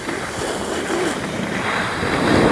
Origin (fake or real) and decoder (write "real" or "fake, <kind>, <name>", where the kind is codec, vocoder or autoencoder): real